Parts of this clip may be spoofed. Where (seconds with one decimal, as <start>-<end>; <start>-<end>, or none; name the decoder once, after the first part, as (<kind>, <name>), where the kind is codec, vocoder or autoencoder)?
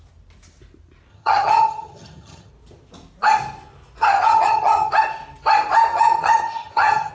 1.1-2.5 (vocoder, HiFi-GAN); 4.0-4.9; 5.9-7.1